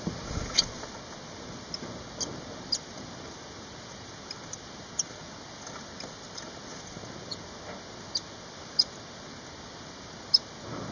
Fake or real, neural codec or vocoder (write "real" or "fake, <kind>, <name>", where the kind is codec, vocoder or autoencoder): real